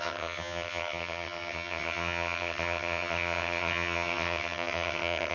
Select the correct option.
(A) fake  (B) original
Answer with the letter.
A